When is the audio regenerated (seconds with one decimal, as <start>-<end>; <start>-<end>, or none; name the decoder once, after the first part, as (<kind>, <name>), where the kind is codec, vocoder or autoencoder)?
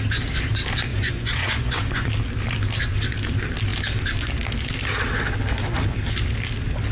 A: 0.9-2.1 (vocoder, Vocos)